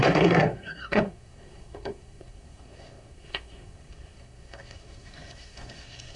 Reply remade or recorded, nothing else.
remade